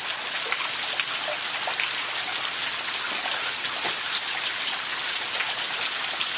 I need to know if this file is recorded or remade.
recorded